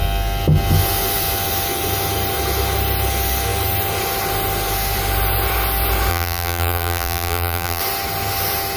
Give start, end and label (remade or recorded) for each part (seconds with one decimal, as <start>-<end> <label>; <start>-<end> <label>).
0.0-6.1 recorded; 6.1-7.8 remade; 7.8-8.8 recorded